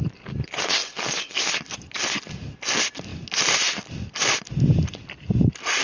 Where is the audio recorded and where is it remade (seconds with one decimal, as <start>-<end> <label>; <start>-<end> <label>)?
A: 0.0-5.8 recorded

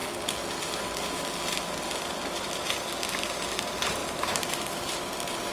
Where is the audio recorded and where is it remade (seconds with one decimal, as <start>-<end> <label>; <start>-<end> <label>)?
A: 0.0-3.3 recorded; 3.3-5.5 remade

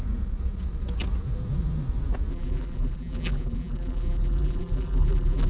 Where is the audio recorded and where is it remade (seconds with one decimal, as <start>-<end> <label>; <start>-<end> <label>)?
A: 0.0-2.3 recorded; 2.3-5.5 remade

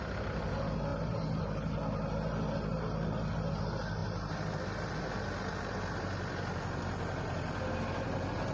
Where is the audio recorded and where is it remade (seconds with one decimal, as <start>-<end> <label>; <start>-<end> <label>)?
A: 0.0-8.5 recorded